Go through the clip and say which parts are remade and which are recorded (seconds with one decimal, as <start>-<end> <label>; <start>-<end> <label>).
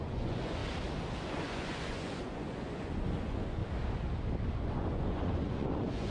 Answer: 0.0-0.6 remade; 0.6-1.3 recorded; 1.3-3.6 remade; 3.6-4.5 recorded; 4.5-6.1 remade